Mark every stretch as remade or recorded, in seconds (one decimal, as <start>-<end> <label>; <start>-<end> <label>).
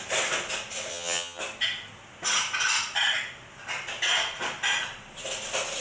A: 0.0-0.9 recorded; 0.9-1.4 remade; 1.4-5.8 recorded